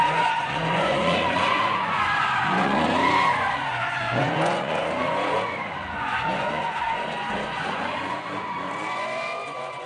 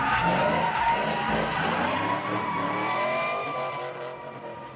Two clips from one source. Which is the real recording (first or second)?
second